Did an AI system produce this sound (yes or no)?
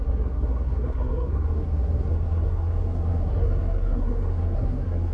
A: yes